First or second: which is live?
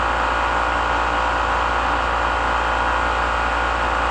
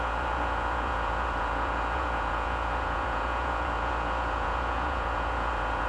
first